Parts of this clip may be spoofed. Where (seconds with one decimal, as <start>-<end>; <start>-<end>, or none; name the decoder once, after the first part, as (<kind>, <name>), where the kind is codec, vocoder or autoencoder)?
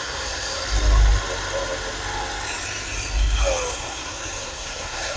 0.0-0.6 (codec, SNAC); 3.7-5.2